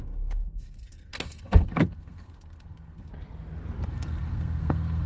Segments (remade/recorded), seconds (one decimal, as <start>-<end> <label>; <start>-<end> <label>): 0.0-3.1 remade; 3.1-3.9 recorded; 3.9-5.1 remade